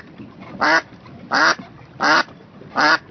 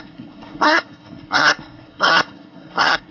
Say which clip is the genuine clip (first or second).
first